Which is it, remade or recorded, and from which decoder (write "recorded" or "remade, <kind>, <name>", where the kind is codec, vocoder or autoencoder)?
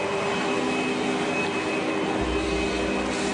recorded